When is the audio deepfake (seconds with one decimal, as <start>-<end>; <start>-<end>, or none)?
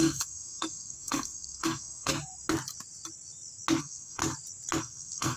0.0-2.1; 3.8-4.2; 4.8-5.4